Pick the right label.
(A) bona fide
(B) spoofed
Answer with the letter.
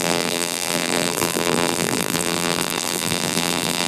B